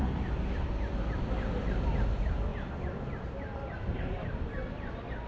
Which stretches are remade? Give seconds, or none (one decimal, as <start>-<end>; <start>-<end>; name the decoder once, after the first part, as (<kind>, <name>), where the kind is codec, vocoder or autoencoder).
none